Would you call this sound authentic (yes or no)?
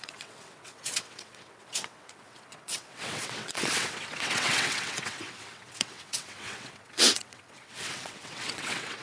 no